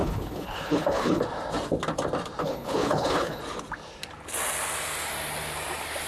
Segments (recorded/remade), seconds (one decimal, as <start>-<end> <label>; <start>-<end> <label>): 0.0-1.2 remade; 1.2-2.4 recorded; 2.4-3.4 remade; 3.4-6.1 recorded